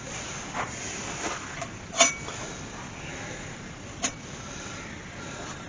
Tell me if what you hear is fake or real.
real